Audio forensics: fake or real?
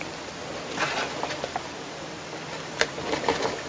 real